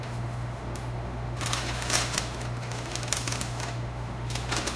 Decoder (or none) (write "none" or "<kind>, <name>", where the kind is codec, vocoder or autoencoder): autoencoder, DAC-VAE